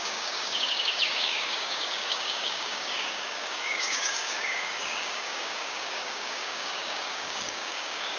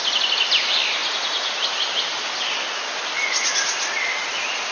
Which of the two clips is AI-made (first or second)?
first